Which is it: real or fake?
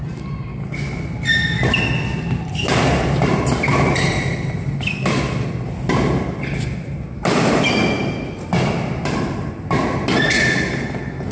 real